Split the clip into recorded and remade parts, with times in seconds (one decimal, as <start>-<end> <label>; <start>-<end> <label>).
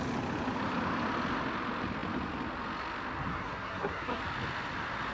0.0-3.3 recorded; 3.3-4.2 remade; 4.2-5.1 recorded